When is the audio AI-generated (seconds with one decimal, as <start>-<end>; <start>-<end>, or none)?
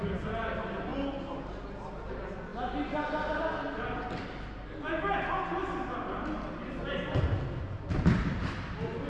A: none